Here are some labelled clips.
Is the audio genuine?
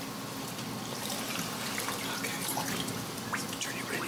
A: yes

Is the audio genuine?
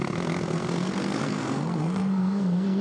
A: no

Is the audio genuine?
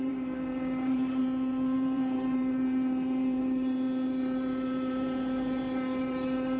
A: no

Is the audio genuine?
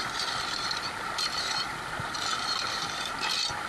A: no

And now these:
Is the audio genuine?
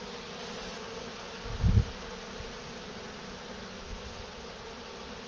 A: yes